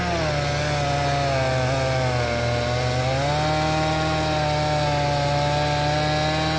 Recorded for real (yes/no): yes